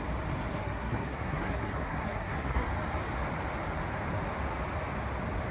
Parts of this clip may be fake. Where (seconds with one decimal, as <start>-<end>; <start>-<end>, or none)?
0.5-2.7